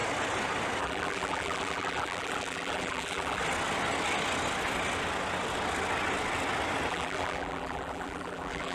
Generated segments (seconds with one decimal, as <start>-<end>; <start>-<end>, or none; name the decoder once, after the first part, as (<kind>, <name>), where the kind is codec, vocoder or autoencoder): 0.8-3.4 (vocoder, BigVGAN v2); 6.9-8.7